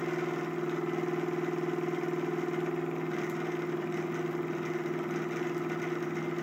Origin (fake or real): real